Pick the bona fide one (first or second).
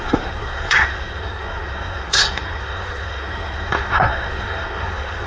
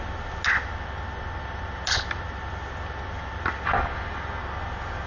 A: second